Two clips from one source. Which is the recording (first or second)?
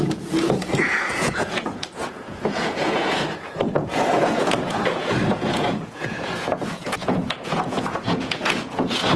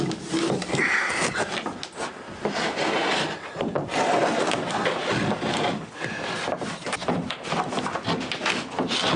second